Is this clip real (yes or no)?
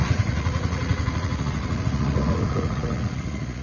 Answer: no